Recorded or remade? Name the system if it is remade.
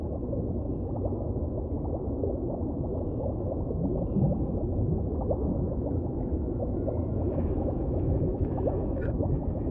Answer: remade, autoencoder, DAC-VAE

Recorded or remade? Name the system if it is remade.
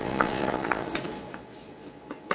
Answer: remade, vocoder, Vocos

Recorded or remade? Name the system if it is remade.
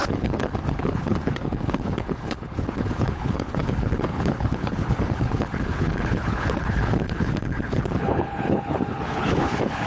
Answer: remade, codec, HILCodec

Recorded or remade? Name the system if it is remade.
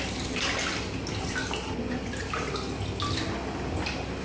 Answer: recorded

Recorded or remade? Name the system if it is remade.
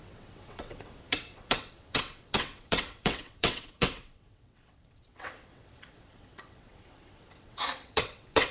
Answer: remade, vocoder, WaveNeXt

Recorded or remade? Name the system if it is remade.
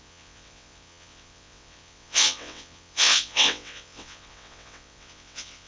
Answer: remade, vocoder, WaveNeXt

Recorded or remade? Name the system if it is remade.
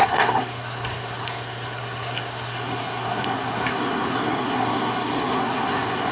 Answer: remade, codec, SNAC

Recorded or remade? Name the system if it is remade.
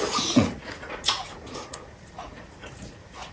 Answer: remade, vocoder, Vocos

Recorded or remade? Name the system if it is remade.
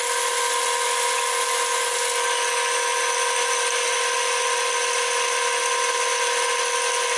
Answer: recorded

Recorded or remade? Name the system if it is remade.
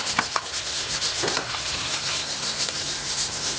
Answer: remade, codec, SNAC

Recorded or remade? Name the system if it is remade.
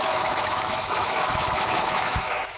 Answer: remade, autoencoder, DAC-VAE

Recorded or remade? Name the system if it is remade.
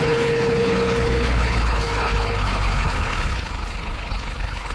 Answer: remade, codec, HILCodec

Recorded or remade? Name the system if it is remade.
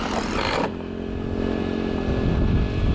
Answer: recorded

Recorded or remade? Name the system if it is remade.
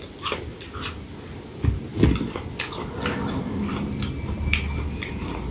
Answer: recorded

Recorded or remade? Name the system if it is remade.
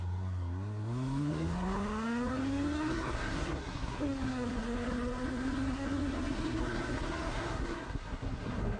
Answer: remade, codec, SNAC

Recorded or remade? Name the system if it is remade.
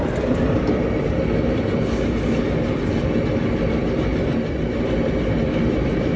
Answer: recorded